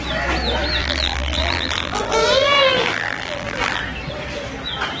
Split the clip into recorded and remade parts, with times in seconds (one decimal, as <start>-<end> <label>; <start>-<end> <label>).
0.0-0.8 recorded; 0.8-3.8 remade; 3.8-5.0 recorded